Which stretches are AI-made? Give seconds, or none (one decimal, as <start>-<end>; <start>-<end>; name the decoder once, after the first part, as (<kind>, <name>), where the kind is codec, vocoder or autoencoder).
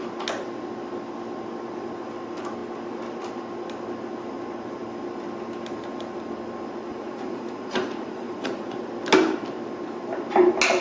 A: 6.9-8.9 (vocoder, Vocos)